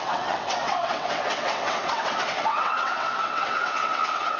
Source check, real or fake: fake